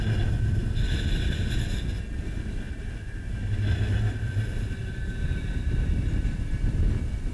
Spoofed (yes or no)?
no